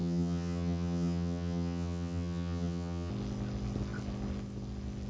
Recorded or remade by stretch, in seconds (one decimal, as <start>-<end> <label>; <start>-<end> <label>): 0.0-3.1 remade; 3.1-5.1 recorded